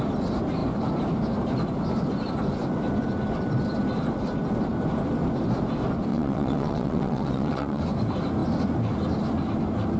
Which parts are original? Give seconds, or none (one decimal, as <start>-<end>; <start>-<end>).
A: 0.0-6.1; 7.8-10.0